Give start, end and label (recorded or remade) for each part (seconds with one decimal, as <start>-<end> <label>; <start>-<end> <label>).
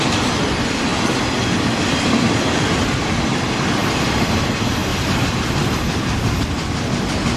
0.0-0.9 remade; 0.9-3.0 recorded; 3.0-7.4 remade